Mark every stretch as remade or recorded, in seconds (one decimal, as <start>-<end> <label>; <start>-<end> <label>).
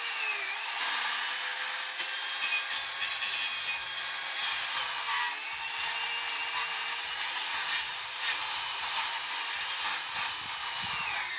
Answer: 0.0-7.9 recorded; 7.9-9.1 remade; 9.1-11.4 recorded